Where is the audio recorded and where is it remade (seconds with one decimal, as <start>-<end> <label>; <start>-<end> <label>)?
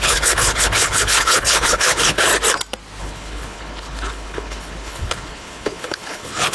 0.0-2.3 remade; 2.3-3.0 recorded; 3.0-6.5 remade